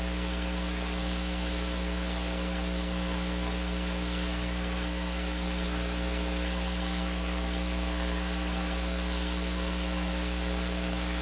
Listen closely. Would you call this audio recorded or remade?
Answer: remade